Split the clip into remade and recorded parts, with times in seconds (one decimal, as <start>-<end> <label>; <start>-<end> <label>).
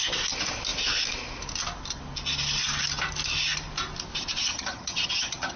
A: 0.0-4.5 recorded; 4.5-5.6 remade